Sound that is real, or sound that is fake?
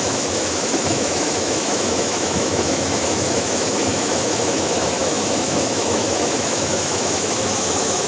fake